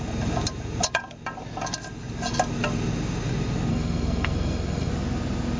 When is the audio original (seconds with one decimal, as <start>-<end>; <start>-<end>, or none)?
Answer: 0.0-3.7; 4.9-5.6